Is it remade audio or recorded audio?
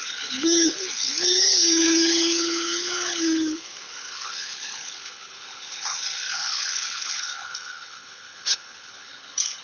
remade